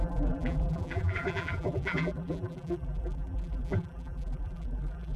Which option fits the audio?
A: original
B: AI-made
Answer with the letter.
B